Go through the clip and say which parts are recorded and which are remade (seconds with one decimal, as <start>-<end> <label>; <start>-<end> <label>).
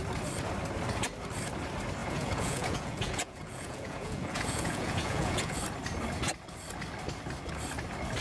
0.0-2.0 recorded; 2.0-5.6 remade; 5.6-8.2 recorded